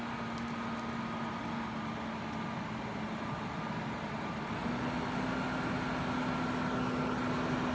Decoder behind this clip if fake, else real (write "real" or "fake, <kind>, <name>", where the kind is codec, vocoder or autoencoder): real